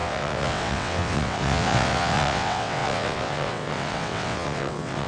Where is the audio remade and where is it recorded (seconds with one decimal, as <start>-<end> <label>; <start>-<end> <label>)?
0.0-5.1 remade

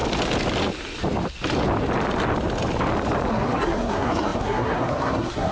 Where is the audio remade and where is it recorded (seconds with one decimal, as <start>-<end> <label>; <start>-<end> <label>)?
0.0-3.3 recorded; 3.3-5.5 remade

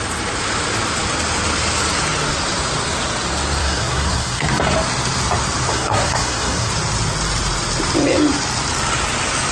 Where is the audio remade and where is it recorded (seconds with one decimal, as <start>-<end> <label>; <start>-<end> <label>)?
0.0-3.6 recorded; 3.6-4.5 remade; 4.5-5.7 recorded; 5.7-6.7 remade; 6.7-9.5 recorded

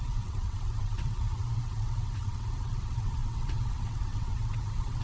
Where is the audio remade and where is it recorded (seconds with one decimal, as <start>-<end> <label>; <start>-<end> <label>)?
0.0-5.0 remade